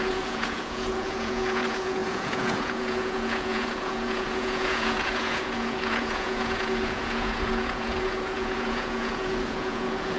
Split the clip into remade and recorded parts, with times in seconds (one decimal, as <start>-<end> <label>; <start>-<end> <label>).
0.0-10.2 remade